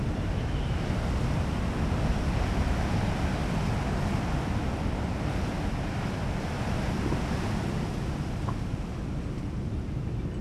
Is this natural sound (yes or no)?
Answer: yes